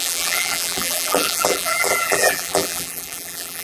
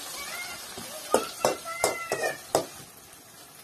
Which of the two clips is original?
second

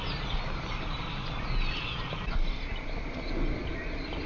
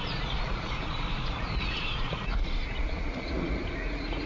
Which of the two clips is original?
first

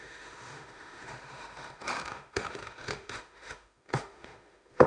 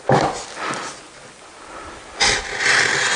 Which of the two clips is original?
second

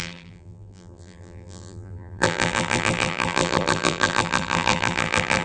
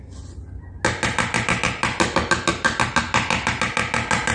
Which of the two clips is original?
second